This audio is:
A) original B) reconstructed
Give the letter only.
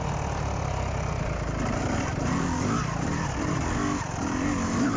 A